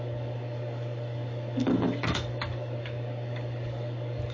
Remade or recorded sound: remade